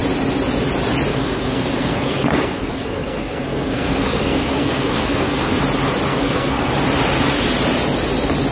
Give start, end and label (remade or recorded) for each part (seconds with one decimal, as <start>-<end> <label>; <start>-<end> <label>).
0.0-1.1 recorded; 1.1-5.5 remade; 5.5-6.1 recorded; 6.1-6.7 remade; 6.7-8.5 recorded